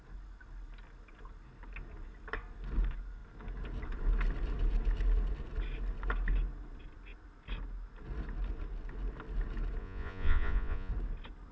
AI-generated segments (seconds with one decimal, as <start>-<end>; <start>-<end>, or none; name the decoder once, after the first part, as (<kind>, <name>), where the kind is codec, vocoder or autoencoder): 9.8-10.9 (vocoder, Vocos)